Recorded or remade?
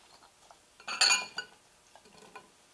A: recorded